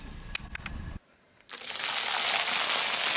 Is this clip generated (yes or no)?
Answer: no